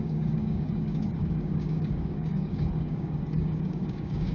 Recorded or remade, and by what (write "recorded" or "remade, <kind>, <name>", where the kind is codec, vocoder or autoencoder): remade, codec, DAC